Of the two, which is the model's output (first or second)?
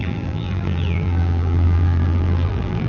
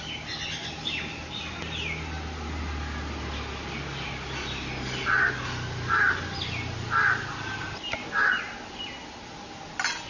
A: first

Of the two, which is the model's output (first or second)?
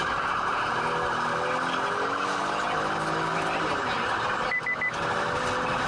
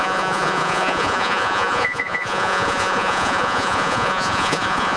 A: second